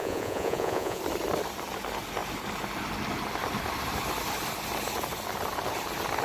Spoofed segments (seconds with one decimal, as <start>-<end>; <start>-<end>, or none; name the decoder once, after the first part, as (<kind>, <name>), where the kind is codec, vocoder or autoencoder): 0.0-1.0 (vocoder, Vocos)